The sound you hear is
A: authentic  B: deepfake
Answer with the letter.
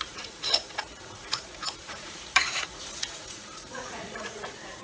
B